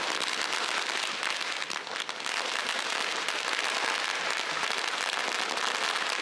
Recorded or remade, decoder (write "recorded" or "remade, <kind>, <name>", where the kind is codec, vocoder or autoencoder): recorded